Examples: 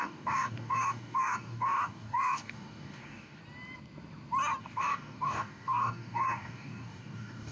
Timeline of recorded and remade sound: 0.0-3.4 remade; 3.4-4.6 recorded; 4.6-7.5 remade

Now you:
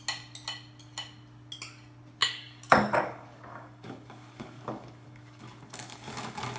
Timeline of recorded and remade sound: 0.0-2.2 recorded; 2.2-6.6 remade